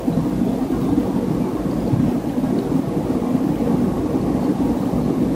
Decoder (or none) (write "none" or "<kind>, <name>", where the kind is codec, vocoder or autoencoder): none